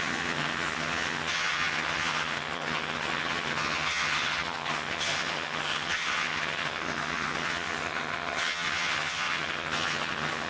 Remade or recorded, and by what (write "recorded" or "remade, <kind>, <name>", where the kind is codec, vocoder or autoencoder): remade, vocoder, HiFi-GAN